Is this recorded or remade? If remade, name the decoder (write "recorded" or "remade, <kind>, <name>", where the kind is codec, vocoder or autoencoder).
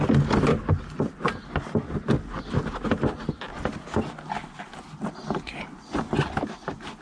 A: recorded